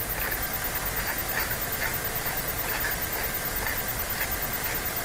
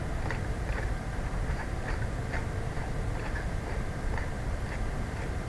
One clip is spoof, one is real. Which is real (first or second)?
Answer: first